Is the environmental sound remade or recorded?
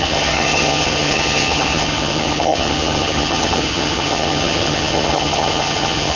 remade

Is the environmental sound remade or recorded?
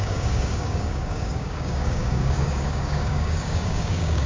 remade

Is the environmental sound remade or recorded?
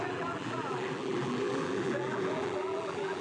remade